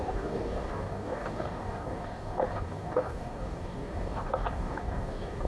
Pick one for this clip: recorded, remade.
remade